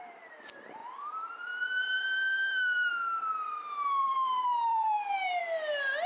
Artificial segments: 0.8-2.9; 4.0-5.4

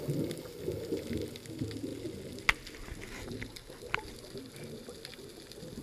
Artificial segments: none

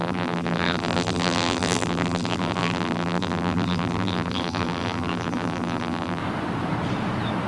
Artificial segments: 0.0-6.2